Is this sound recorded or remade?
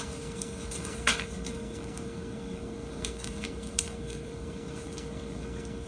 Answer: remade